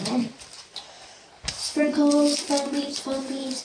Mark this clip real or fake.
real